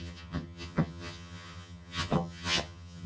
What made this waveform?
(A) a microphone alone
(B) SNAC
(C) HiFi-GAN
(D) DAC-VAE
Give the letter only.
C